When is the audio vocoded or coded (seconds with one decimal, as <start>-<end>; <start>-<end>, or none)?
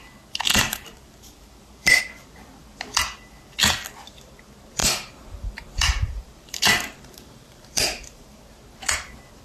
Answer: 0.5-2.0; 4.8-8.4